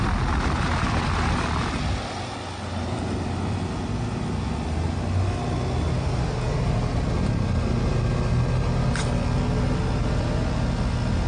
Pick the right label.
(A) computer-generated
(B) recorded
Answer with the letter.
B